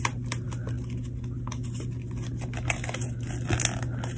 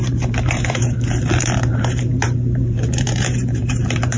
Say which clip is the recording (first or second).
first